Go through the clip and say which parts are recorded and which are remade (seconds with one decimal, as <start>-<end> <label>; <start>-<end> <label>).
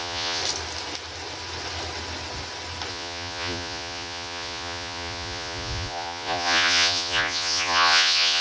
0.0-0.4 remade; 0.4-2.9 recorded; 2.9-8.4 remade